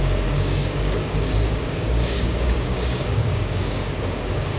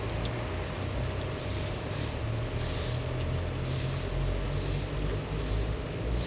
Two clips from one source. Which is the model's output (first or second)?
first